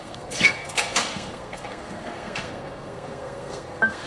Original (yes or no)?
no